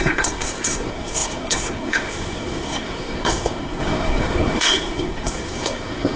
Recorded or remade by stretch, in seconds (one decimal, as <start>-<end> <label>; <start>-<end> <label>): 0.0-6.2 remade